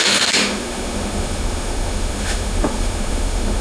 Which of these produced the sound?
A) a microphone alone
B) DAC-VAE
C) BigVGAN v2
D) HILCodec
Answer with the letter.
B